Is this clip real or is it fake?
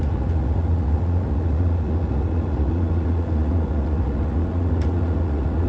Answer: fake